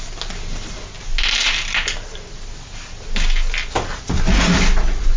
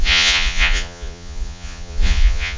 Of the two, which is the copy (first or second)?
second